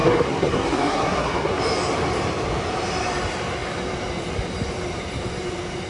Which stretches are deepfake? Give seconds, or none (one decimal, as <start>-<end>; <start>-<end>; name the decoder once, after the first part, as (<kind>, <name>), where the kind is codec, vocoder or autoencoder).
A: 0.0-1.6 (codec, SNAC)